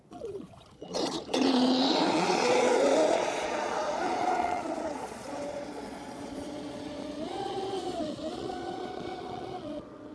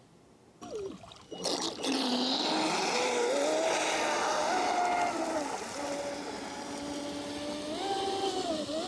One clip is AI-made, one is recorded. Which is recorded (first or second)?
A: second